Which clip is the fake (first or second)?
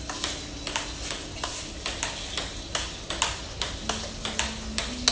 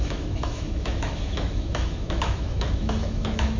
second